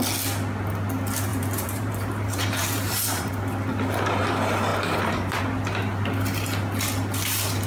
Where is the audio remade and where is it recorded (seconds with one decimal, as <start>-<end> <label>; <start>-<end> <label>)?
0.0-1.3 recorded; 1.3-3.3 remade; 3.3-4.7 recorded; 4.7-5.4 remade; 5.4-7.7 recorded